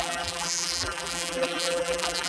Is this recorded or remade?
remade